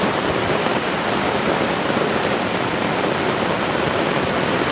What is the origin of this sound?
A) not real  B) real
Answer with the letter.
B